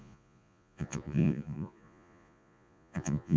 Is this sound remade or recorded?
remade